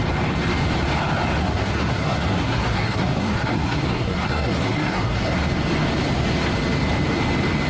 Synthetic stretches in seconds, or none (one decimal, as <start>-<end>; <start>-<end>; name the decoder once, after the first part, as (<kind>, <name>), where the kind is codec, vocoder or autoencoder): 1.4-5.4 (codec, SNAC)